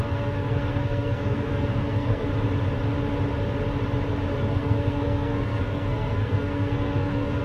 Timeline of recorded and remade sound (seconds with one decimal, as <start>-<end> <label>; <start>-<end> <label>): 0.0-2.3 remade; 2.3-4.4 recorded; 4.4-7.4 remade